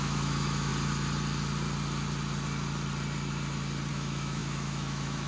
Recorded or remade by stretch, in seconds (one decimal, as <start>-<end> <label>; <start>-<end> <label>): 0.0-0.7 remade; 0.7-3.9 recorded; 3.9-5.3 remade